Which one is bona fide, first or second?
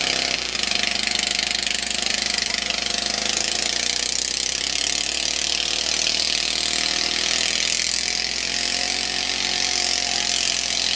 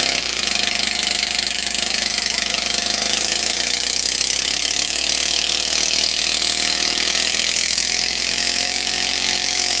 first